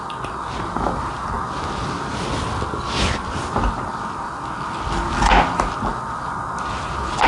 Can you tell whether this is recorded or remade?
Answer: recorded